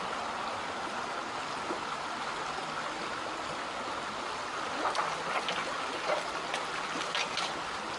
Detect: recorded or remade recorded